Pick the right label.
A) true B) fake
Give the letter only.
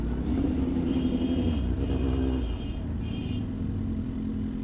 A